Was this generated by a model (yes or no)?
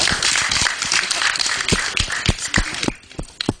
no